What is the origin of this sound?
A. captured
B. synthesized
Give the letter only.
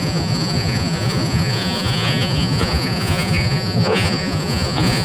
B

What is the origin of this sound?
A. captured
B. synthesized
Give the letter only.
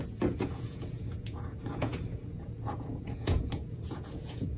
B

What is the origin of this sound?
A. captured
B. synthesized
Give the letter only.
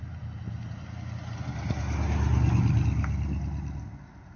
A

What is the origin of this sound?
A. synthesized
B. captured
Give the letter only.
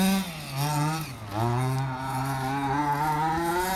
B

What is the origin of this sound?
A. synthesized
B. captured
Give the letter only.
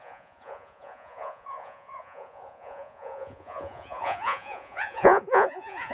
A